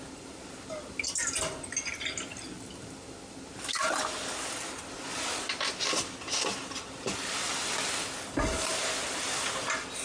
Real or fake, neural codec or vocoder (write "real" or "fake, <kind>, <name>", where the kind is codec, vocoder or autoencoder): real